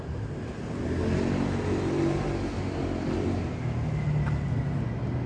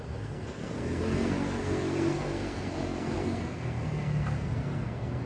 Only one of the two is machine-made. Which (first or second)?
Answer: second